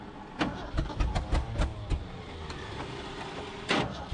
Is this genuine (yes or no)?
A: yes